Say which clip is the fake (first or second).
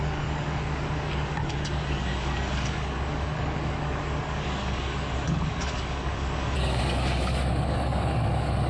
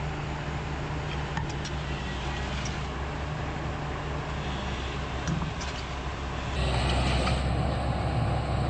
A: first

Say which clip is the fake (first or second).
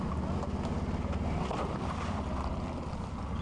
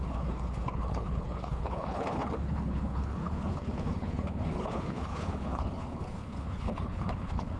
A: second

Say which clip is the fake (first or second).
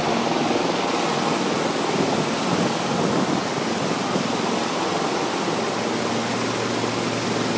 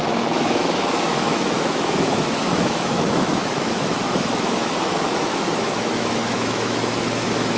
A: second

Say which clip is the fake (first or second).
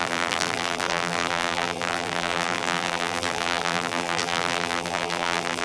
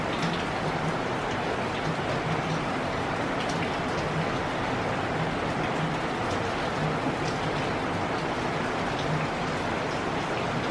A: first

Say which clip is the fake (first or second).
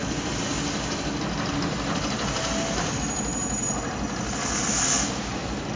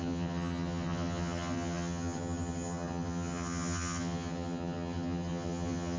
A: second